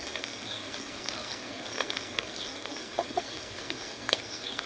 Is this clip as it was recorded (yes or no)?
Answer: no